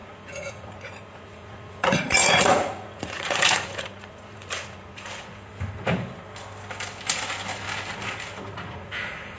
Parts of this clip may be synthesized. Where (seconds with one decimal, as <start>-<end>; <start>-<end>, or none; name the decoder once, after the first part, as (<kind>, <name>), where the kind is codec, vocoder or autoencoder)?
0.0-5.5 (vocoder, Vocos); 8.7-9.4

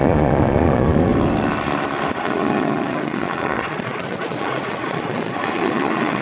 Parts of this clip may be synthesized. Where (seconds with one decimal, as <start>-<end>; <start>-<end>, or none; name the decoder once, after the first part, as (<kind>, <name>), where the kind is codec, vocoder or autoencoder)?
0.0-1.1 (vocoder, Vocos); 2.1-6.2

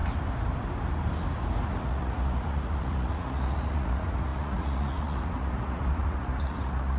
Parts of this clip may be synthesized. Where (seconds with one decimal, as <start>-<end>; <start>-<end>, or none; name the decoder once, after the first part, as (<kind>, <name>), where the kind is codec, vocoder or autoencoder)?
1.8-7.0 (vocoder, Vocos)

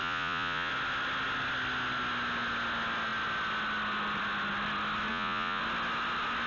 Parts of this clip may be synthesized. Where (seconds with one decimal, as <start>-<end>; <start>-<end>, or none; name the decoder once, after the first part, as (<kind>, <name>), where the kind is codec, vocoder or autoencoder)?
0.0-0.7 (vocoder, Vocos); 5.1-5.6

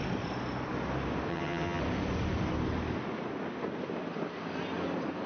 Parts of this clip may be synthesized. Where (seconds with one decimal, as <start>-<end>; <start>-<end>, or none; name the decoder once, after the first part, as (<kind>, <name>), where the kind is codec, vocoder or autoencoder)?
1.3-1.8 (vocoder, HiFi-GAN)

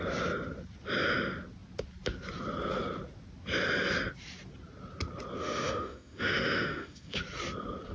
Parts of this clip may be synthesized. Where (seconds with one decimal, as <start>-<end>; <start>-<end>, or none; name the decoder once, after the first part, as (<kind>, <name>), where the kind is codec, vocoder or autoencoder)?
5.4-7.2 (autoencoder, DAC-VAE)

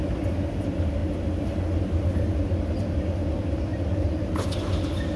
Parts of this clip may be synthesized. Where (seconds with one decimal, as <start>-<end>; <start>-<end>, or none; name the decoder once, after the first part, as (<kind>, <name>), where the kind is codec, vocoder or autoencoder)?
none